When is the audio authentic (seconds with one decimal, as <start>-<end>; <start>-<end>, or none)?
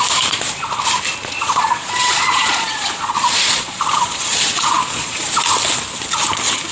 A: 0.0-1.2; 5.2-6.7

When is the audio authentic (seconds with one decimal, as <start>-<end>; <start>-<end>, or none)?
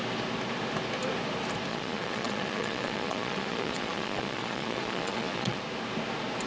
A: 0.0-1.7; 5.6-6.5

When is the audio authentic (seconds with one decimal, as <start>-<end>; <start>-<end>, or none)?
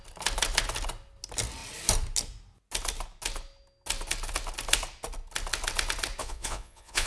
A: 0.0-6.2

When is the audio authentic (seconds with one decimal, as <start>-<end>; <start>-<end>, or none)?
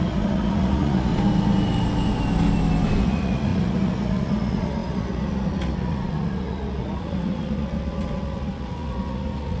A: 1.1-3.0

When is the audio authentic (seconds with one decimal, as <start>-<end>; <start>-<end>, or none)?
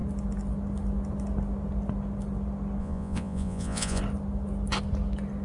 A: 0.0-2.8; 4.0-5.4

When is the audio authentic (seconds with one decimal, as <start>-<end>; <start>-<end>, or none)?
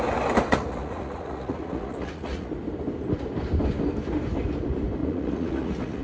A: 0.0-0.5; 2.5-5.0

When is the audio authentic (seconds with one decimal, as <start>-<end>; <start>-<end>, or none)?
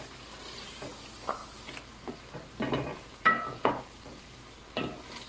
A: 0.0-2.9; 3.7-5.3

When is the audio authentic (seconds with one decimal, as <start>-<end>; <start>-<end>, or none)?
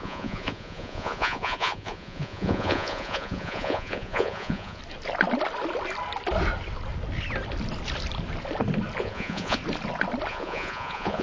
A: 4.8-9.0; 9.6-10.3